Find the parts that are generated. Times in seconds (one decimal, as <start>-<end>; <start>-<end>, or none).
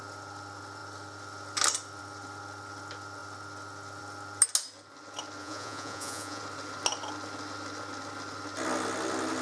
5.4-6.4